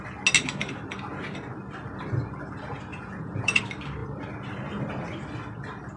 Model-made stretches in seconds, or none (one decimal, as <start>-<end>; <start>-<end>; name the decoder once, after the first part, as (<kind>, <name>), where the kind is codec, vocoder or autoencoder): 2.9-3.6 (vocoder, Vocos)